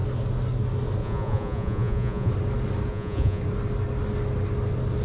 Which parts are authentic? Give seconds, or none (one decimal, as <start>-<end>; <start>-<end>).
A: 0.0-1.0; 2.3-2.9; 3.4-5.0